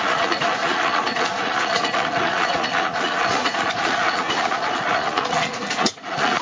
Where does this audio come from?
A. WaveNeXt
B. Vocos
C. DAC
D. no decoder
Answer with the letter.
B